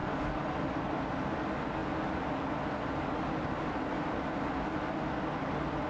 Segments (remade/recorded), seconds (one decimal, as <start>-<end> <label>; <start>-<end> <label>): 0.0-5.9 recorded